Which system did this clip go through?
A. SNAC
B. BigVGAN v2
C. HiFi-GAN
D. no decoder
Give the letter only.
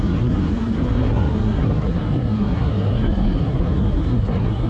A